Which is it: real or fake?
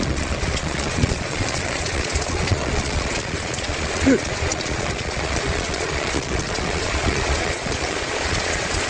fake